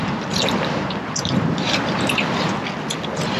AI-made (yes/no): no